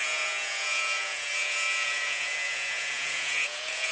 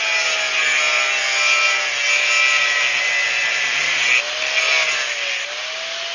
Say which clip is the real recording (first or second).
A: second